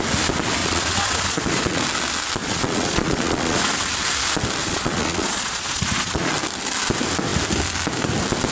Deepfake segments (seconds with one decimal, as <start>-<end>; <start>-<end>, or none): 0.6-1.8; 2.4-3.6; 4.6-6.3